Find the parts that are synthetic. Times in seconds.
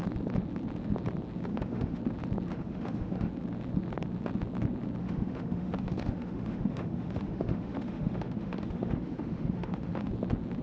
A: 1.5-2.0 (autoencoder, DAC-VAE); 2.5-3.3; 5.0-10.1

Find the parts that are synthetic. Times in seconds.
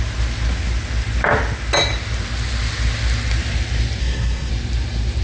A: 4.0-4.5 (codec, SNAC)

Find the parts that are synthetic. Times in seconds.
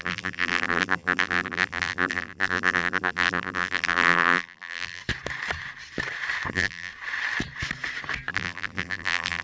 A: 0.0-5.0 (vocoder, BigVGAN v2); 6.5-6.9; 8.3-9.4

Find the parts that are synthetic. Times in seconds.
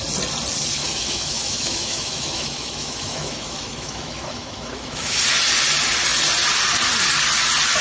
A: 0.8-5.2 (autoencoder, DAC-VAE)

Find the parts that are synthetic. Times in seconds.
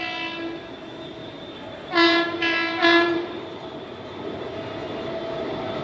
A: 1.2-4.4 (vocoder, BigVGAN v2)